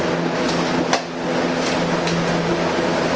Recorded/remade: recorded